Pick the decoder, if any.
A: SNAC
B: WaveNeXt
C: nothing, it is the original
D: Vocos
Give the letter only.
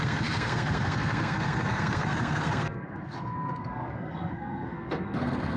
A